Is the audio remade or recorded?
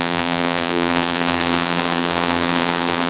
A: remade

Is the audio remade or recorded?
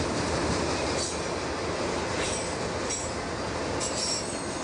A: recorded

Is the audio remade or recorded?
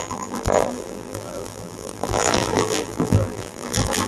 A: remade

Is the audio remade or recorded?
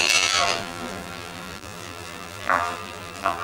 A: remade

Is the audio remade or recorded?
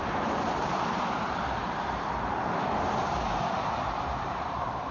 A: remade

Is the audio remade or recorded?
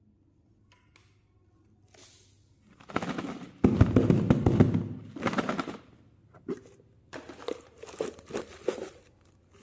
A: recorded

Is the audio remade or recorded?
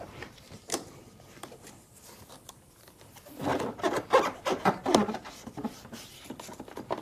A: remade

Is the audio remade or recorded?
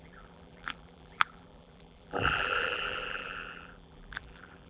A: remade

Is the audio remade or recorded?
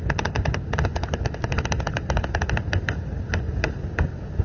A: remade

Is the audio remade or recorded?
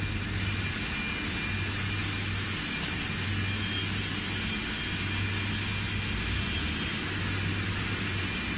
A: recorded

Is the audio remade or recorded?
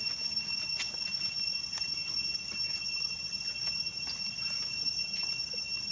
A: recorded